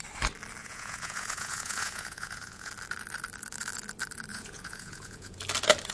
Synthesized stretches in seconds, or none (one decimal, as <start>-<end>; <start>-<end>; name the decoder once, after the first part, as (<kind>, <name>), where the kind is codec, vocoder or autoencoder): 0.6-2.7 (vocoder, Vocos); 4.3-5.4

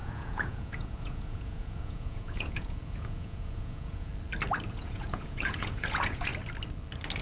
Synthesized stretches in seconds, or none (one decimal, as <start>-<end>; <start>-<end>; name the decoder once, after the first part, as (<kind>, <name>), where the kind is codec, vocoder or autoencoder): 0.0-4.1 (vocoder, Vocos); 4.7-6.3